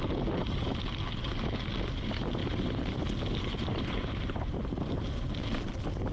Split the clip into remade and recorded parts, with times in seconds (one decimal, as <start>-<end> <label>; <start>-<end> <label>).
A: 0.0-2.4 recorded; 2.4-3.0 remade; 3.0-3.5 recorded; 3.5-5.4 remade; 5.4-6.1 recorded

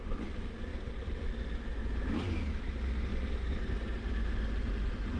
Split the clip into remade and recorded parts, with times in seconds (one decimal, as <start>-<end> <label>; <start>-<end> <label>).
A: 0.0-0.7 recorded; 0.7-1.3 remade; 1.3-1.8 recorded; 1.8-2.7 remade; 2.7-3.1 recorded; 3.1-3.7 remade; 3.7-5.2 recorded

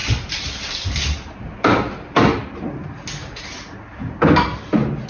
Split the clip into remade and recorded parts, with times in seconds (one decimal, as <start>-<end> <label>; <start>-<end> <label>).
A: 0.0-5.1 recorded

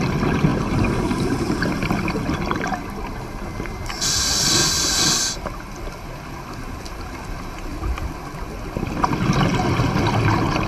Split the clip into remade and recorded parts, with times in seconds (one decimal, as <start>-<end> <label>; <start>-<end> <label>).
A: 0.0-0.5 recorded; 0.5-1.7 remade; 1.7-4.6 recorded; 4.6-5.2 remade; 5.2-10.7 recorded